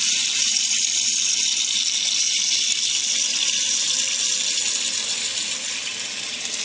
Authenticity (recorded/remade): recorded